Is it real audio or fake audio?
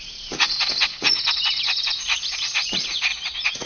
fake